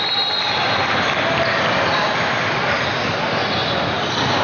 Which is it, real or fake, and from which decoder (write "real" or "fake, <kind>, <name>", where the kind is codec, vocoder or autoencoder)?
real